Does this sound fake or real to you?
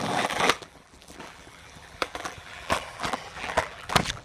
fake